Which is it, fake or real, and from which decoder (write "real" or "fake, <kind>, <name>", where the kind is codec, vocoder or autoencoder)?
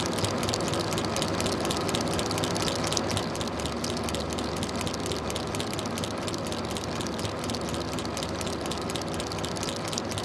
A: real